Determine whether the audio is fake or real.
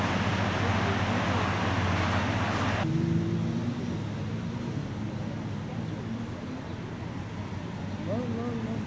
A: real